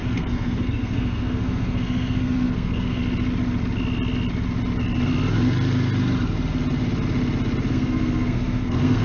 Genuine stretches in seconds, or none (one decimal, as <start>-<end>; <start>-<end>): 3.0-7.7

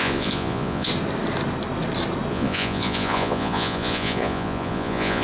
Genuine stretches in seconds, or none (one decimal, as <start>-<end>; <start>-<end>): 0.9-2.3